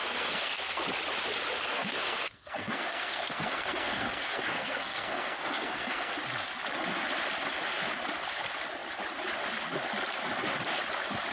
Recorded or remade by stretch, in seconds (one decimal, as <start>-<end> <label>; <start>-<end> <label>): 0.0-0.8 remade; 0.8-1.6 recorded; 1.6-6.1 remade; 6.1-11.3 recorded